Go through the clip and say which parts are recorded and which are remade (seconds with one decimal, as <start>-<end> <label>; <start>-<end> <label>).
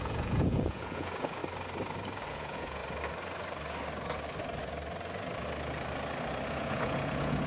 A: 0.0-1.4 remade; 1.4-2.3 recorded; 2.3-2.8 remade; 2.8-6.5 recorded; 6.5-7.5 remade